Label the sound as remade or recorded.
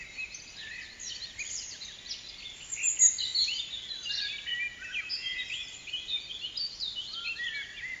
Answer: recorded